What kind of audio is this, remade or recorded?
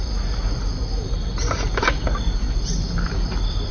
recorded